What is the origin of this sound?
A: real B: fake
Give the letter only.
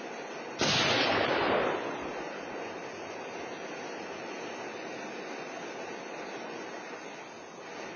A